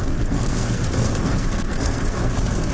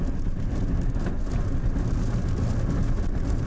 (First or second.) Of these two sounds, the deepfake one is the first